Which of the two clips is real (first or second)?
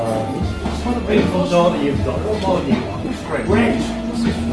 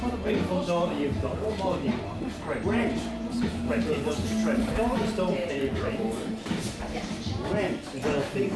first